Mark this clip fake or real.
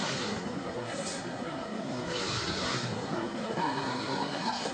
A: fake